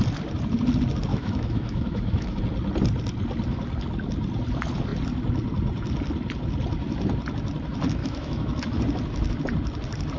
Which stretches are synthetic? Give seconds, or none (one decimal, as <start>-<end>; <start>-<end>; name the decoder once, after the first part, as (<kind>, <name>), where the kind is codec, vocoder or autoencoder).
1.1-2.4 (autoencoder, DAC-VAE); 8.0-8.8